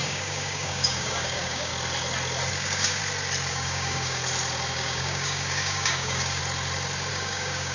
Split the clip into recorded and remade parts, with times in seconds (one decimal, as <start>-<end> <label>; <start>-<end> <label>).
0.0-1.7 remade; 1.7-2.5 recorded; 2.5-3.0 remade; 3.0-3.5 recorded; 3.5-4.2 remade; 4.2-4.7 recorded; 4.7-6.4 remade; 6.4-7.1 recorded; 7.1-7.7 remade